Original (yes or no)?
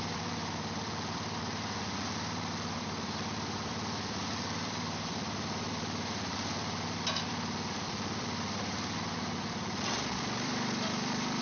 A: no